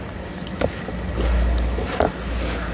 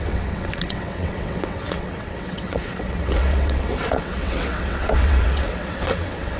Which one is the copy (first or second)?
second